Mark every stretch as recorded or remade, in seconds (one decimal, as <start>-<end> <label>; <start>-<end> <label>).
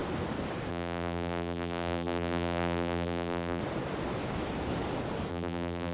0.0-0.7 recorded; 0.7-3.6 remade; 3.6-5.3 recorded; 5.3-5.9 remade